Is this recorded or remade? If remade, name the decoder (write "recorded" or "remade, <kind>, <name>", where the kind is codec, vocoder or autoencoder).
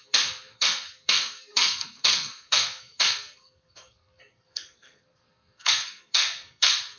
remade, codec, SNAC